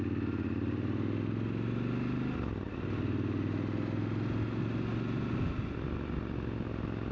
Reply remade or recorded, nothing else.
recorded